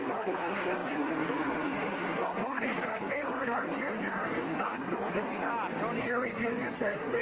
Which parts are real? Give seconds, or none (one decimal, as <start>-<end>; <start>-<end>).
5.5-6.0